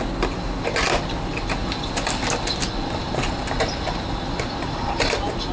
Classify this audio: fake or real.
real